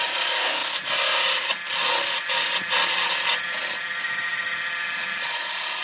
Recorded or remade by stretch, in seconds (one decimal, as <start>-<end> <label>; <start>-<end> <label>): 0.0-5.8 recorded